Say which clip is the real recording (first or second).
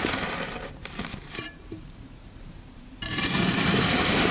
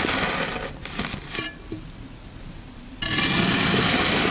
second